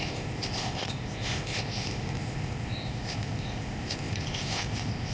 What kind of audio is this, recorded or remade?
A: remade